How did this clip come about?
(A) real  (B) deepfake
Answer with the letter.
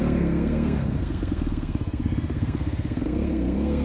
B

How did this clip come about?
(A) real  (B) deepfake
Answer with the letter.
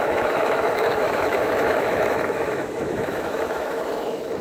B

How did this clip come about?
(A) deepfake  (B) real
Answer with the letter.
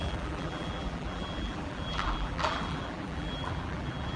A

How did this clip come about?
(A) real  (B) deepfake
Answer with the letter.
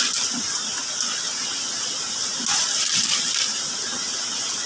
A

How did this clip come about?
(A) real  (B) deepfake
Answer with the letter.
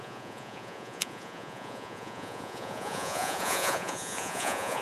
B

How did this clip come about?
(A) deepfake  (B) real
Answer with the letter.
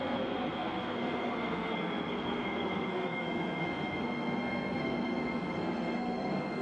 A